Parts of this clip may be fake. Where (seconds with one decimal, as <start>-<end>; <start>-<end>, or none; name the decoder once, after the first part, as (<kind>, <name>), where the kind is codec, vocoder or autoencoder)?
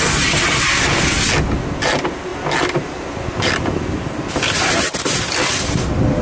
none